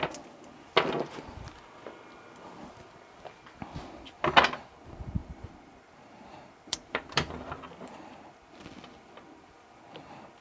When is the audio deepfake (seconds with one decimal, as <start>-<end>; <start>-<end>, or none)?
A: 5.2-7.6